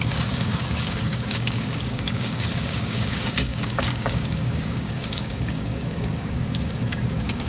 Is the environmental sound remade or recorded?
remade